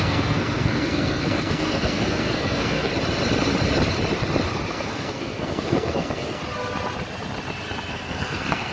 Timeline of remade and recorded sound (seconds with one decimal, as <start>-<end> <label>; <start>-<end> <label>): 0.0-2.9 remade; 2.9-4.7 recorded; 4.7-6.4 remade; 6.4-7.9 recorded; 7.9-8.7 remade